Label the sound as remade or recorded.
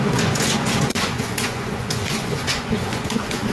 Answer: remade